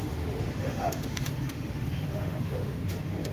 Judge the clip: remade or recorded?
remade